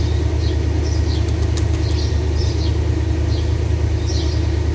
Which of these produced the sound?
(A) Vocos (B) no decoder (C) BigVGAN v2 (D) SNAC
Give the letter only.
B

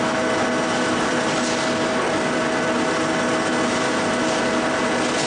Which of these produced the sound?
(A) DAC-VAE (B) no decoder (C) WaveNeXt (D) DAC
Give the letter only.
B